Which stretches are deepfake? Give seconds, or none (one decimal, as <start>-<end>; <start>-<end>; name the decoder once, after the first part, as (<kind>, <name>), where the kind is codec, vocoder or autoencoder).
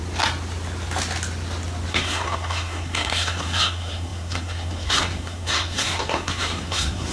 1.9-7.1 (codec, SNAC)